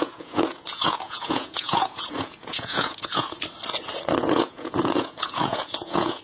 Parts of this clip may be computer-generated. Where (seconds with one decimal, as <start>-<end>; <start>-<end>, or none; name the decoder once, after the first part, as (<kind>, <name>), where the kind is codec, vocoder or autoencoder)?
0.0-3.4 (vocoder, Vocos); 4.2-6.2